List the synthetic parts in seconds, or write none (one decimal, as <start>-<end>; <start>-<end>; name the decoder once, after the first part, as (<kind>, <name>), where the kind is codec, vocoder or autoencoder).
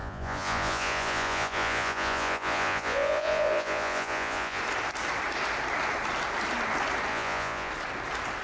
0.0-4.6 (vocoder, Vocos); 7.1-7.7